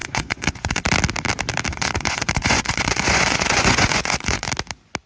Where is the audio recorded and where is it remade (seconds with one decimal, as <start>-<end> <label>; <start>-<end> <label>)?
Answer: 0.0-0.8 remade; 0.8-1.7 recorded; 1.7-4.5 remade; 4.5-5.1 recorded